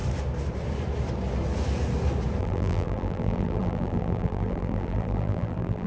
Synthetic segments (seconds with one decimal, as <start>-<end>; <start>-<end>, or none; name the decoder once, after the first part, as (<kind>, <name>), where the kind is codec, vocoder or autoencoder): 2.4-5.9 (vocoder, BigVGAN v2)